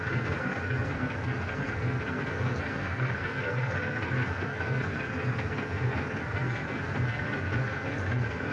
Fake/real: fake